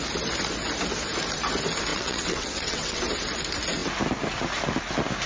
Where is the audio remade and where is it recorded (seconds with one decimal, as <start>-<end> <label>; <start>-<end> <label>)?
0.0-1.9 recorded; 1.9-3.0 remade; 3.0-5.3 recorded